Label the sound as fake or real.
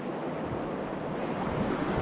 real